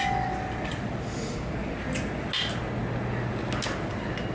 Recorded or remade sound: recorded